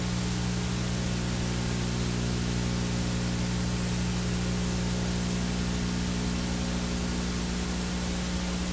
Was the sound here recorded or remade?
recorded